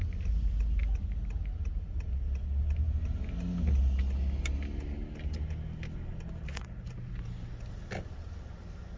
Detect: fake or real real